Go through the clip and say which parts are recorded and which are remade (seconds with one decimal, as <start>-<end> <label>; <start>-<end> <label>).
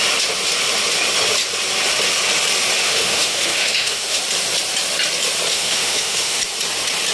0.0-2.8 recorded; 2.8-4.2 remade; 4.2-5.5 recorded; 5.5-6.4 remade; 6.4-7.1 recorded